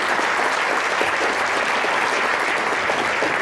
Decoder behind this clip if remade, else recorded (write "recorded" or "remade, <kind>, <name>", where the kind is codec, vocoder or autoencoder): recorded